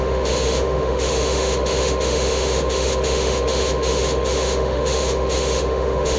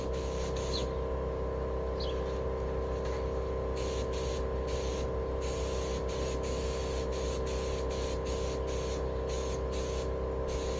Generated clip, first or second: first